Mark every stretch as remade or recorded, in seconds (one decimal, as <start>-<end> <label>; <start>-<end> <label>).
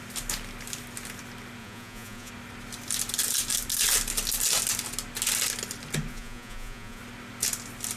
0.0-1.6 recorded; 1.6-2.3 remade; 2.3-6.1 recorded; 6.1-7.0 remade; 7.0-8.0 recorded